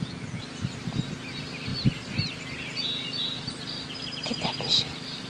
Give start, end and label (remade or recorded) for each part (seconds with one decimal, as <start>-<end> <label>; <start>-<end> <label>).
0.0-5.3 recorded